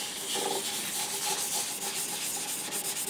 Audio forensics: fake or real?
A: real